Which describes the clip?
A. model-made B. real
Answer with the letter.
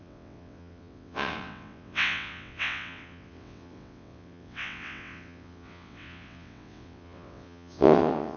A